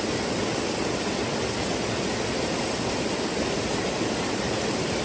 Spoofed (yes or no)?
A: no